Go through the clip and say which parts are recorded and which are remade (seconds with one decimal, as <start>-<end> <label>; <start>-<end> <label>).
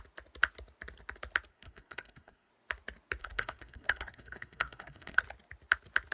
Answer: 0.0-1.5 recorded; 1.5-2.5 remade; 2.5-3.2 recorded; 3.2-5.2 remade; 5.2-6.1 recorded